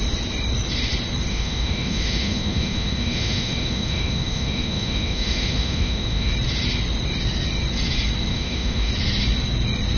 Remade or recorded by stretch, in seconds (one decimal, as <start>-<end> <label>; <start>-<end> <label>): 0.0-1.3 recorded; 1.3-6.3 remade; 6.3-8.3 recorded; 8.3-8.9 remade; 8.9-10.0 recorded